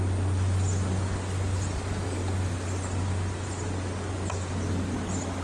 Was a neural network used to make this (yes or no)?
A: no